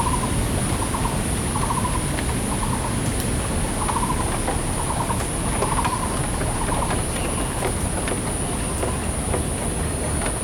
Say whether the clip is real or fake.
real